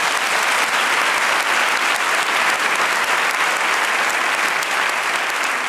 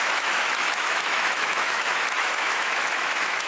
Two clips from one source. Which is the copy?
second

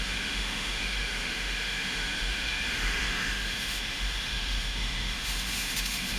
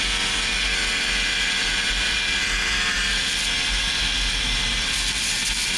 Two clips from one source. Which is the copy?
first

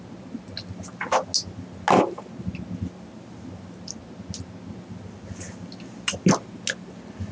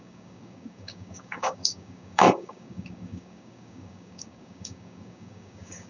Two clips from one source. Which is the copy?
second